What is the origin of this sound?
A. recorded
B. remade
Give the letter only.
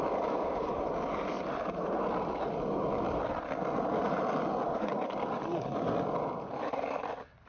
A